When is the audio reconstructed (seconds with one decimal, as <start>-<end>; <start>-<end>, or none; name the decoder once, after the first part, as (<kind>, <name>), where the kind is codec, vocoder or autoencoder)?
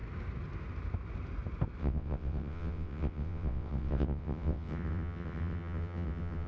1.8-6.5 (vocoder, WaveNeXt)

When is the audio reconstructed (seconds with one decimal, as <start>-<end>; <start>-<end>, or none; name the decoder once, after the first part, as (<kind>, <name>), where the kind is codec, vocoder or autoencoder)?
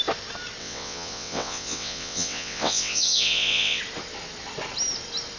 0.6-3.8 (vocoder, WaveNeXt)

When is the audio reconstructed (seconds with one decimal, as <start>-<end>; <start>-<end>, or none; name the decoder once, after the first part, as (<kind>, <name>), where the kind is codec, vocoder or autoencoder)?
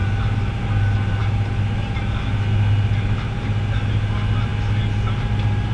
none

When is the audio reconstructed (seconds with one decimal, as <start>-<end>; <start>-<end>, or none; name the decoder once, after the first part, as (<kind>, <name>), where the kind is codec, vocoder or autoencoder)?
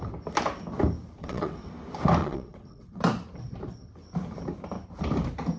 1.2-1.7 (vocoder, WaveNeXt); 2.2-3.0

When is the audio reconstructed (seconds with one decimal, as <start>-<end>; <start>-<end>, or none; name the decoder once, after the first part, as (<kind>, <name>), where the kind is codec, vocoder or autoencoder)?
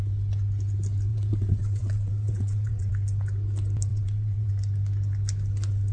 1.1-2.9 (vocoder, WaveNeXt); 3.9-4.5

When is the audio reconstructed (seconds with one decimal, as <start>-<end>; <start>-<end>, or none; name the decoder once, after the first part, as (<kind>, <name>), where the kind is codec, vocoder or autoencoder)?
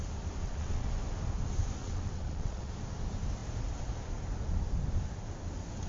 0.4-0.9 (vocoder, WaveNeXt); 1.8-2.7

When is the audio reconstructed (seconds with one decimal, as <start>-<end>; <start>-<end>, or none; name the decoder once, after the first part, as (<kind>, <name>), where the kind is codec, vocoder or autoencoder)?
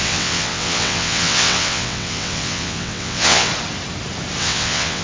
0.0-3.5 (vocoder, WaveNeXt); 4.4-5.0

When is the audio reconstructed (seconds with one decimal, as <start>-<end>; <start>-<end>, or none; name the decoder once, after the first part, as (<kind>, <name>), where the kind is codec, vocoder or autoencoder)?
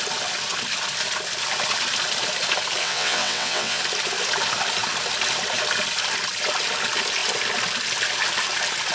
2.8-3.8 (vocoder, WaveNeXt)